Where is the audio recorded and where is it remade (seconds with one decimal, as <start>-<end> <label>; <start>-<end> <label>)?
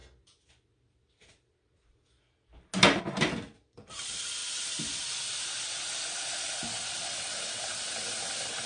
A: 0.0-3.0 recorded; 3.0-4.4 remade; 4.4-6.9 recorded; 6.9-7.7 remade; 7.7-8.7 recorded